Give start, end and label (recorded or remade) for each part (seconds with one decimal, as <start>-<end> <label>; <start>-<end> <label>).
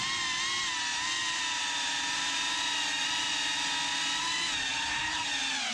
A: 0.0-1.2 recorded; 1.2-3.3 remade; 3.3-5.7 recorded